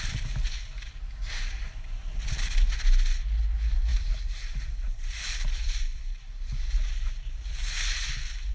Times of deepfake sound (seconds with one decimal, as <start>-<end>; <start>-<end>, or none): 3.9-6.0